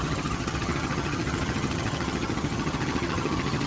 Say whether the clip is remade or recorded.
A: remade